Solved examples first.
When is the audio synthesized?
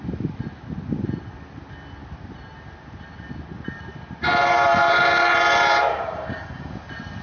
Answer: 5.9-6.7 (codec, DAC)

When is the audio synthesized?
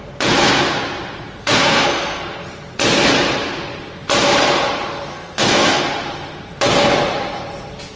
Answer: 1.4-2.2 (codec, SNAC); 5.1-5.8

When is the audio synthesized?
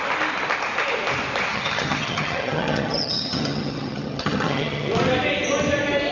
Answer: 1.5-4.9 (vocoder, HiFi-GAN)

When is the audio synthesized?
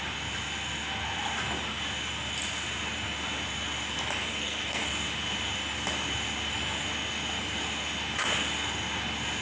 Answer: 4.2-4.8 (codec, SNAC)